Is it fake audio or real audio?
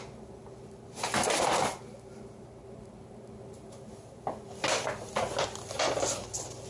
real